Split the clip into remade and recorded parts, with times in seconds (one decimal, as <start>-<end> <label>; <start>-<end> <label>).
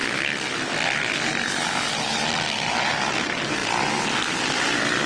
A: 0.0-5.1 recorded